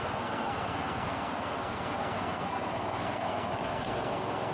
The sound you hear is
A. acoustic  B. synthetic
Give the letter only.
B